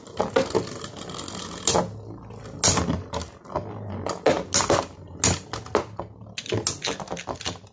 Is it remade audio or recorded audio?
recorded